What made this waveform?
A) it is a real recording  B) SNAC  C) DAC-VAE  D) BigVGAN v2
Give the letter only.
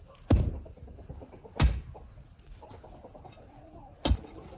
A